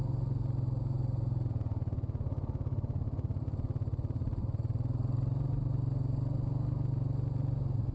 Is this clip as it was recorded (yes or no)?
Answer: yes